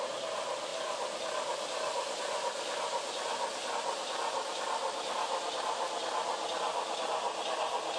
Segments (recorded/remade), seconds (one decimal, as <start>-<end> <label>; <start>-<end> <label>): 0.0-8.0 recorded